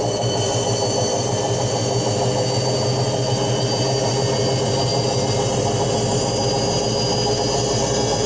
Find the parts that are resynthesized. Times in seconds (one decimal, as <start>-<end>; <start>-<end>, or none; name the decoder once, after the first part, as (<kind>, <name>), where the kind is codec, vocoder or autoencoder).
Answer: none